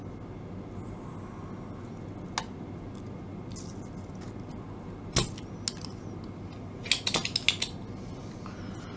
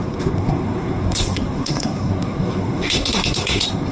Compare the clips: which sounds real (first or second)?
first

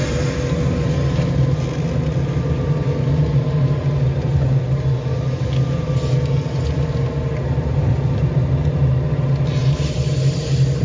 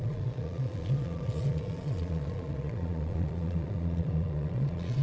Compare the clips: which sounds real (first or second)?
first